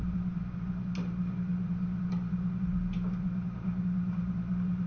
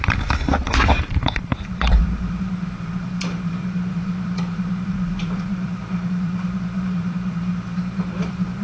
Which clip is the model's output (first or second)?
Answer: second